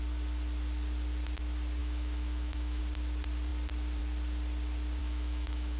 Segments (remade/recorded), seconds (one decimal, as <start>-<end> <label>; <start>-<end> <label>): 0.0-1.8 recorded; 1.8-2.8 remade; 2.8-5.0 recorded; 5.0-5.8 remade